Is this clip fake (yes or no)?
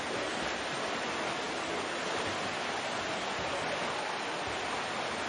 no